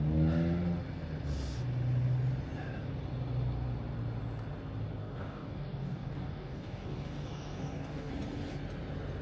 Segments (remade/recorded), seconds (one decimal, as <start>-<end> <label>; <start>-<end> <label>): 0.0-5.0 recorded; 5.0-8.1 remade; 8.1-9.2 recorded